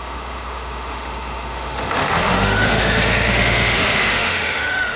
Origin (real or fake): fake